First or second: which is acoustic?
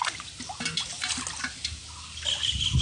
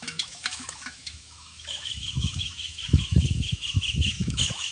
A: first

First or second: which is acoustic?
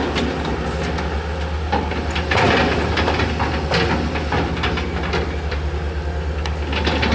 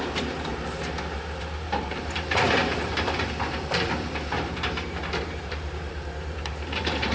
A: first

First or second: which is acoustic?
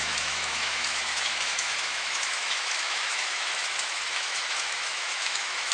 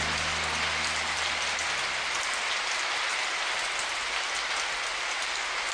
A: second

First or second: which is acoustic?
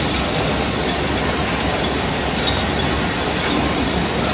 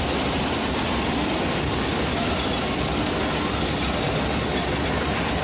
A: first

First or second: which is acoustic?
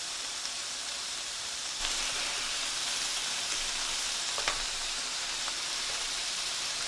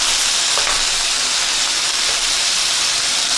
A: second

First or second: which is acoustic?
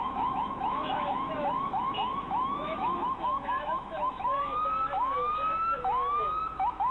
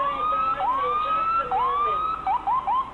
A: second